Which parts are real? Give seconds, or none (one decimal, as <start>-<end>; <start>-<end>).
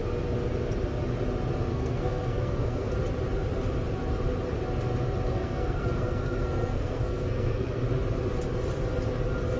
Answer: 0.0-1.7; 2.9-5.3; 7.8-9.6